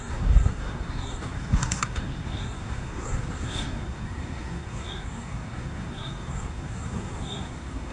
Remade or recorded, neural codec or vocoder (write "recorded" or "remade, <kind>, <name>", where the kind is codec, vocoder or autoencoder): remade, codec, SNAC